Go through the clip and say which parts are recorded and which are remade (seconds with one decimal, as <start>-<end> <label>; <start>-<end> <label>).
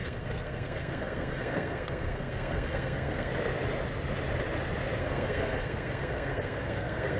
0.0-3.3 remade; 3.3-5.0 recorded; 5.0-7.2 remade